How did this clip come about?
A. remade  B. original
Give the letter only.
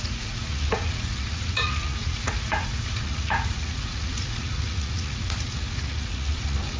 A